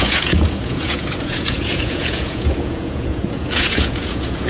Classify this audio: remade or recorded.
remade